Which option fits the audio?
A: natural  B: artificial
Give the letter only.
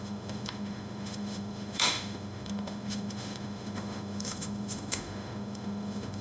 B